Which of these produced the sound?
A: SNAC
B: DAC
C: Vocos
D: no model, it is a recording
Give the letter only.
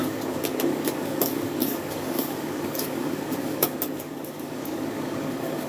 B